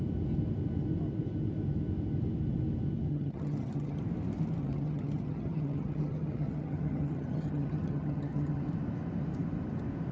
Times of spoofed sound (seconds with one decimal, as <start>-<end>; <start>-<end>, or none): 3.1-4.0; 4.6-8.6